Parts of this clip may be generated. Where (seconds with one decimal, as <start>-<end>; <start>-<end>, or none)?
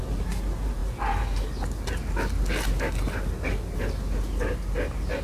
none